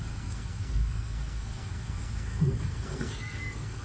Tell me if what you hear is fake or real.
fake